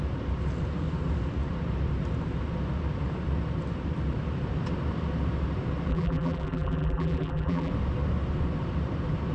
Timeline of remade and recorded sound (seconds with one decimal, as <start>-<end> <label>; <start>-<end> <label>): 0.0-5.9 recorded; 5.9-7.7 remade; 7.7-9.3 recorded